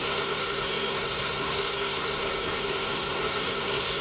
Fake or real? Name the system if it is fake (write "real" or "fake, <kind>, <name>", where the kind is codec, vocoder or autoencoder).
fake, codec, SNAC